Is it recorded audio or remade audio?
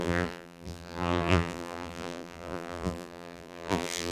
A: remade